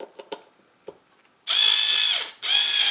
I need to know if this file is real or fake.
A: real